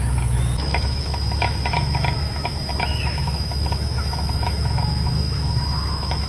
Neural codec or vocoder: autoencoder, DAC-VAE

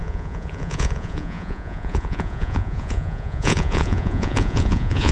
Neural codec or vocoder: vocoder, Vocos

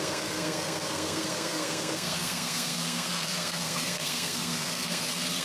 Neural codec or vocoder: codec, SNAC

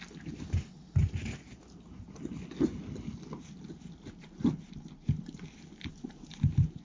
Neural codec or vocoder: none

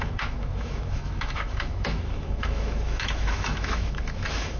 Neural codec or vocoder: autoencoder, DAC-VAE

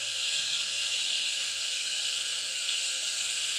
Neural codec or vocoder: codec, SNAC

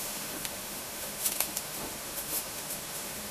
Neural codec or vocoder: autoencoder, DAC-VAE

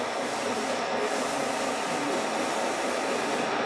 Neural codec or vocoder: none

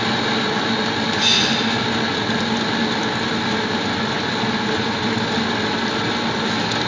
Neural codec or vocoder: none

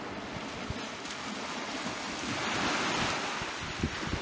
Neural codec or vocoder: none